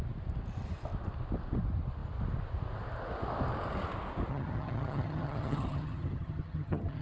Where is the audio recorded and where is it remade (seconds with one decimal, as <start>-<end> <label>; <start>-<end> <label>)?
0.0-4.3 recorded; 4.3-7.0 remade